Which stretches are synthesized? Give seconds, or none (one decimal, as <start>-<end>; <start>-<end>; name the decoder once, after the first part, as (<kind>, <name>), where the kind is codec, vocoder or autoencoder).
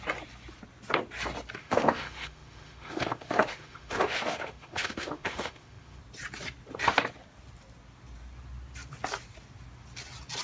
1.6-6.0 (autoencoder, DAC-VAE)